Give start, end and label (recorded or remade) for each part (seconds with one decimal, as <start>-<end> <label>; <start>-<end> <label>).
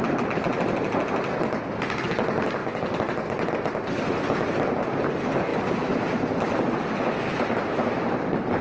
0.0-8.6 recorded